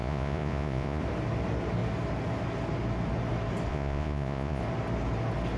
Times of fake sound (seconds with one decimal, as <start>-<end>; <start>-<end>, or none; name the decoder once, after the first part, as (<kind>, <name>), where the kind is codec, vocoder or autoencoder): 0.0-1.0 (vocoder, Vocos); 3.7-4.6